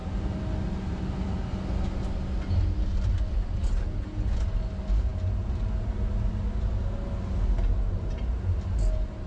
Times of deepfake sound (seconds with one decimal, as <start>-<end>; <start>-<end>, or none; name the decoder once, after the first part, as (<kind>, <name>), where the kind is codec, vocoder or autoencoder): none